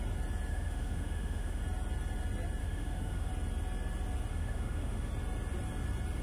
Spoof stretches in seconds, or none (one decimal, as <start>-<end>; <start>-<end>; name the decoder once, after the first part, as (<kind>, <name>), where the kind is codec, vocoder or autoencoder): 0.5-1.6 (autoencoder, DAC-VAE); 2.6-3.3; 4.3-5.1